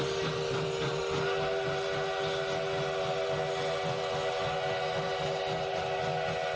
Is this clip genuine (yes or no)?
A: yes